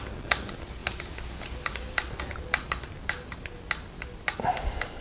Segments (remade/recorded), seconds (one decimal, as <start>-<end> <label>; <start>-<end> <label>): 0.0-5.0 recorded